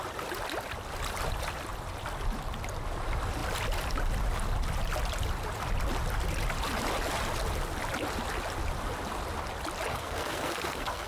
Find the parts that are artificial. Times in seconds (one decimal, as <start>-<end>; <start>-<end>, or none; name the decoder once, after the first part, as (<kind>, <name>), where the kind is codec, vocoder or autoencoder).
9.9-11.1 (codec, SNAC)